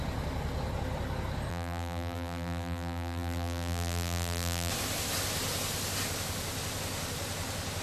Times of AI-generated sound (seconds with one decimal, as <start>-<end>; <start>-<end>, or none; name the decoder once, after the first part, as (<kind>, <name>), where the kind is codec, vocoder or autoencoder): 1.5-4.7 (vocoder, BigVGAN v2)